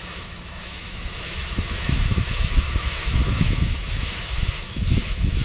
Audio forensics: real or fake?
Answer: fake